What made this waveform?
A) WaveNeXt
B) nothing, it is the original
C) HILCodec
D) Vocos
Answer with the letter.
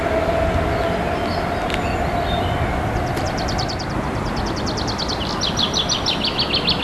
B